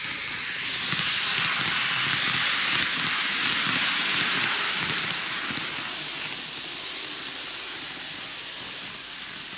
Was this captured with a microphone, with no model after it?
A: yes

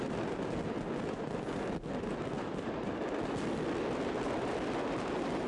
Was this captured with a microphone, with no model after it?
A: yes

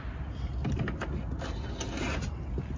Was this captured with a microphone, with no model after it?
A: yes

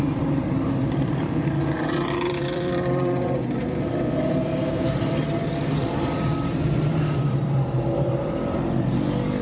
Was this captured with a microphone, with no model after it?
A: no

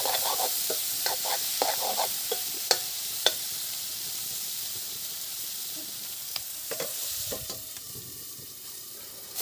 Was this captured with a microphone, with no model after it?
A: no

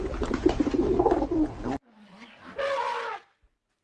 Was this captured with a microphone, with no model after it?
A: no